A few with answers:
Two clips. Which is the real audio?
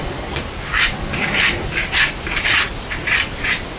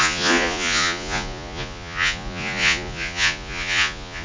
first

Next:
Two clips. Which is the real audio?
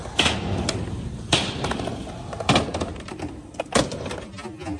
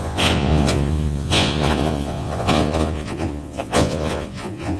first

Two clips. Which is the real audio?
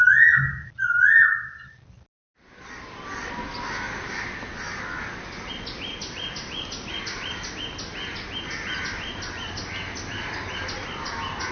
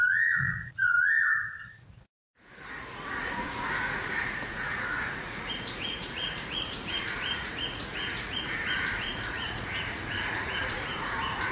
first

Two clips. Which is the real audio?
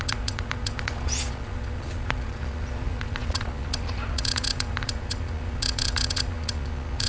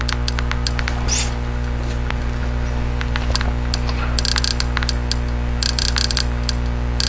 second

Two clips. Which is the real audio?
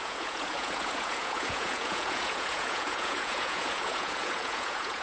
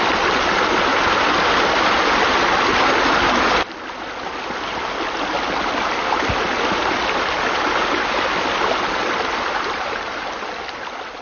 second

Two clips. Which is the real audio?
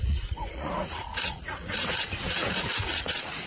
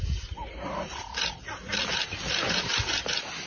second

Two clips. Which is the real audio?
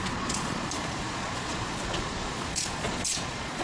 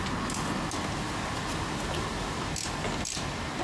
second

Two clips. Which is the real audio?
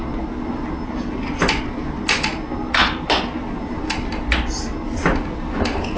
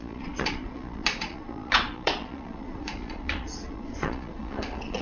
first